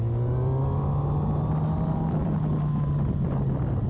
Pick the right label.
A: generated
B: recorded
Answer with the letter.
B